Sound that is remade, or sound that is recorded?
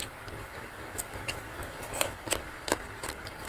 remade